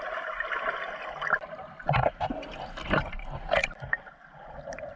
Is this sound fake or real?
real